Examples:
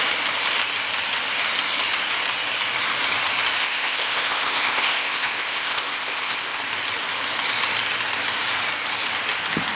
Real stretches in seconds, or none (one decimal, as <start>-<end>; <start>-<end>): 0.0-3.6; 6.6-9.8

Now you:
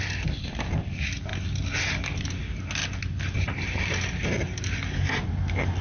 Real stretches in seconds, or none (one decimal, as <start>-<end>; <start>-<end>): 0.0-5.8

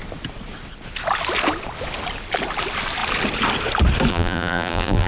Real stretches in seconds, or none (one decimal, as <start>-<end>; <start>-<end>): 0.0-4.1